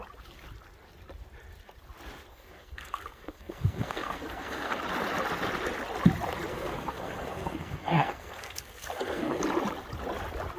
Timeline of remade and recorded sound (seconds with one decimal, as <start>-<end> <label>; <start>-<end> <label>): 0.0-2.3 recorded; 2.3-4.8 remade; 4.8-6.5 recorded; 6.5-9.4 remade; 9.4-10.6 recorded